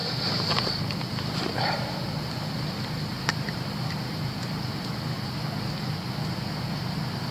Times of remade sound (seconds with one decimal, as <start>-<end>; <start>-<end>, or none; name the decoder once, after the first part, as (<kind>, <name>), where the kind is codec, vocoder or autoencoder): 0.0-4.3 (vocoder, BigVGAN v2)